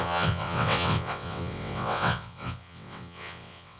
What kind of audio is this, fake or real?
fake